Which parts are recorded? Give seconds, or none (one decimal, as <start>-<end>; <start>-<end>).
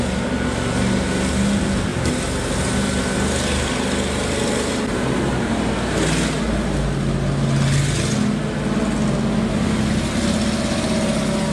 0.0-11.5